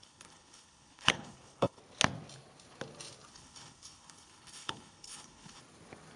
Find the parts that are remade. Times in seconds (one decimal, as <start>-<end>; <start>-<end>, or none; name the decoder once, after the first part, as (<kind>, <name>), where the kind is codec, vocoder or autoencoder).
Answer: 0.0-1.8 (codec, HILCodec); 3.3-5.6